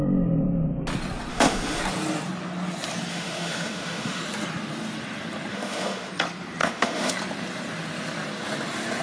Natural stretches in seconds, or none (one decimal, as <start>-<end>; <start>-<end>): 0.0-1.3; 1.8-3.1; 4.2-5.5; 6.1-6.6; 7.1-9.0